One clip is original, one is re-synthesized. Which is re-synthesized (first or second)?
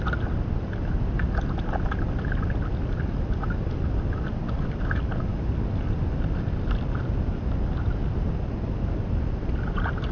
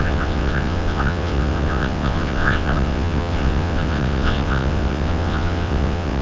second